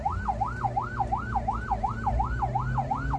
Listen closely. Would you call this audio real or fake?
real